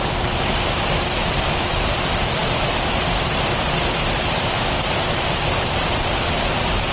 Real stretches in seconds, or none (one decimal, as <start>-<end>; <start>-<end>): 0.0-2.4; 6.5-6.9